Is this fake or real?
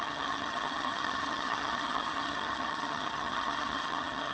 fake